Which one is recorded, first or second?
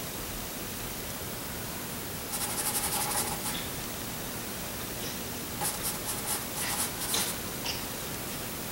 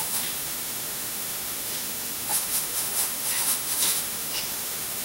first